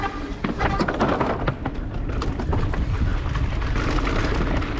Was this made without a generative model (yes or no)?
yes